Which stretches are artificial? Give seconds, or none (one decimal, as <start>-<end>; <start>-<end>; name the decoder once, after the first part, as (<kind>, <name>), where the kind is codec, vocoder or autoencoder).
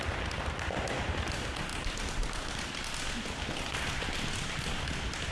0.0-1.7 (vocoder, BigVGAN v2)